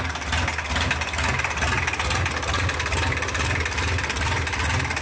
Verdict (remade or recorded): recorded